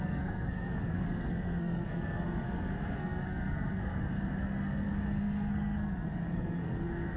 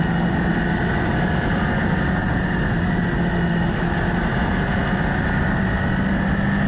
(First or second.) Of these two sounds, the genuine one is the second